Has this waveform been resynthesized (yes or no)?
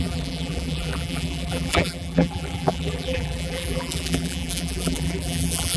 yes